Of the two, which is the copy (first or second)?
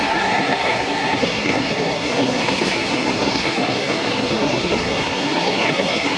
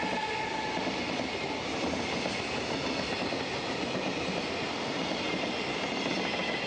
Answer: first